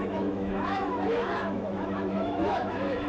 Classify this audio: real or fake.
fake